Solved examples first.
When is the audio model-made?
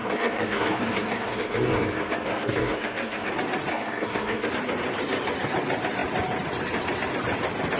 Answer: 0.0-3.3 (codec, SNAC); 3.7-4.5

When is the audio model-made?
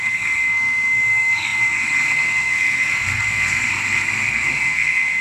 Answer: 0.0-5.2 (codec, SNAC)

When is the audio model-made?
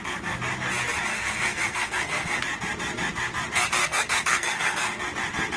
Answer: 1.1-2.4 (codec, SNAC); 3.8-5.0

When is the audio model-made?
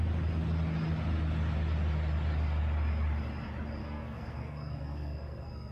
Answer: 3.8-5.7 (codec, SNAC)